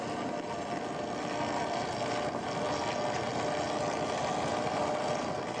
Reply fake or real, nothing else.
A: real